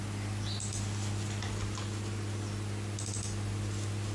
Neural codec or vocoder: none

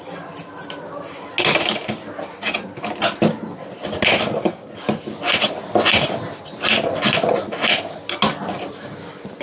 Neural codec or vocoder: none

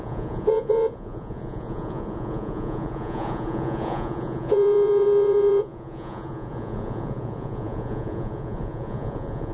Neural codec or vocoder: vocoder, Vocos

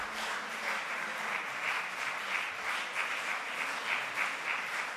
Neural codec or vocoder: none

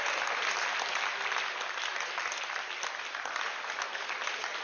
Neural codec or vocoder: none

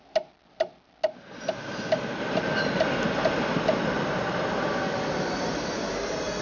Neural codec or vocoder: none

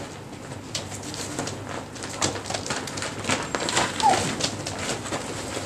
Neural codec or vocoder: none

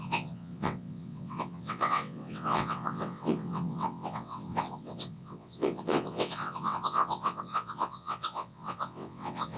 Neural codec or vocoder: vocoder, WaveNeXt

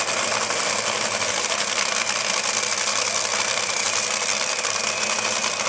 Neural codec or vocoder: vocoder, BigVGAN v2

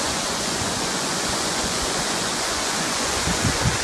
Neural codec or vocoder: vocoder, Vocos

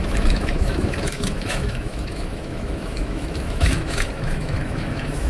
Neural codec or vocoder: autoencoder, DAC-VAE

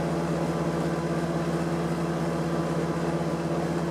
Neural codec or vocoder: none